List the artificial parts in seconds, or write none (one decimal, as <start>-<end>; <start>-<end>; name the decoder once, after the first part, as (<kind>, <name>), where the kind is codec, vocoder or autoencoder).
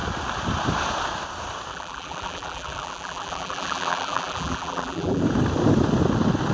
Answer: 1.7-5.2 (vocoder, BigVGAN v2)